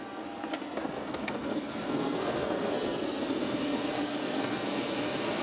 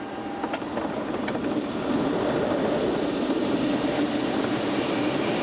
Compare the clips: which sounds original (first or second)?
second